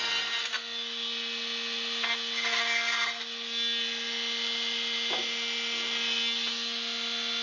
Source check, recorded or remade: recorded